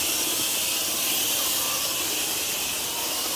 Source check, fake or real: real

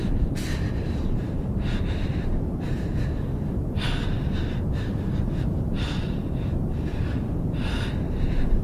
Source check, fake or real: fake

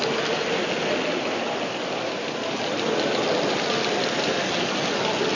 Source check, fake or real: real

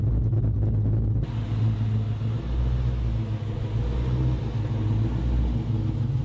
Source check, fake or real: real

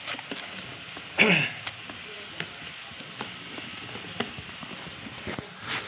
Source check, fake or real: real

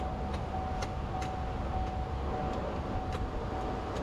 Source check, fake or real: real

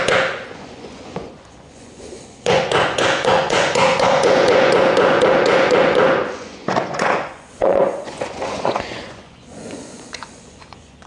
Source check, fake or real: fake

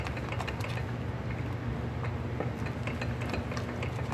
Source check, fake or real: real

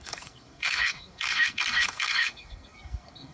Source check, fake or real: fake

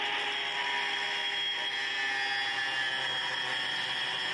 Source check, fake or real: real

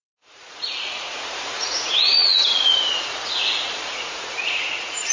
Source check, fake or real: fake